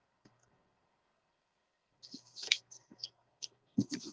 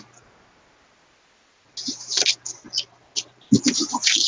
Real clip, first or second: second